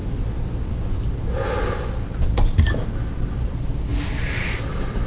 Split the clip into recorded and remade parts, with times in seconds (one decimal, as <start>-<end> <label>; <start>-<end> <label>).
0.0-5.1 recorded